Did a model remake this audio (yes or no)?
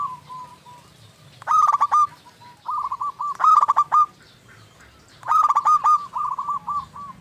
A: no